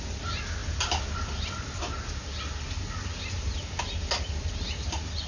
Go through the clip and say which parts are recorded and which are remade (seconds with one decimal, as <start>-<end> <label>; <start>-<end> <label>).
0.0-5.3 recorded